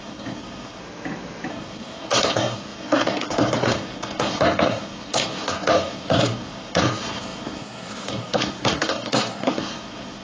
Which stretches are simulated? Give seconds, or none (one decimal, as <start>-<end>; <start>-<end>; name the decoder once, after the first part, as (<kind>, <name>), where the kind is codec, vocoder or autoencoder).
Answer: 0.0-0.8 (codec, SNAC); 1.5-10.2